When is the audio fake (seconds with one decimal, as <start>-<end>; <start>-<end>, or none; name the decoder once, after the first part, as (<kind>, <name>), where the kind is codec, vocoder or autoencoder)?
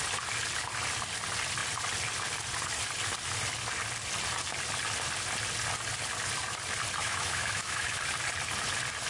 7.0-8.0 (autoencoder, DAC-VAE)